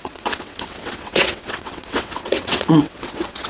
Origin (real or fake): fake